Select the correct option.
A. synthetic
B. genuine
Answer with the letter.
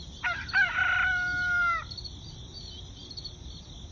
B